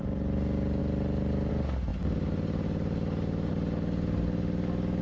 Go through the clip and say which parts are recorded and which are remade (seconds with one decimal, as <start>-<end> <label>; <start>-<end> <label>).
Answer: 0.0-5.0 recorded